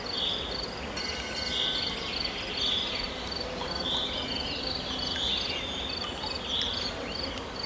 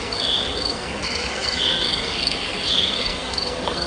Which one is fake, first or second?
second